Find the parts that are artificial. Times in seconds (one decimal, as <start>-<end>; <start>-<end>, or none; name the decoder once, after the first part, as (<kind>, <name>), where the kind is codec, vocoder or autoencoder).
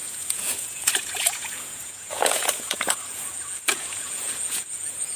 0.0-5.2 (vocoder, Vocos)